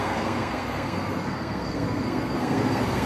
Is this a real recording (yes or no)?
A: no